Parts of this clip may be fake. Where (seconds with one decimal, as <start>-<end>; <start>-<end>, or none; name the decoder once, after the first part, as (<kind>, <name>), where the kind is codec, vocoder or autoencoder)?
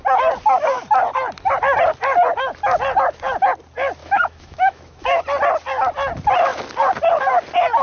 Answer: 4.0-5.2 (autoencoder, DAC-VAE)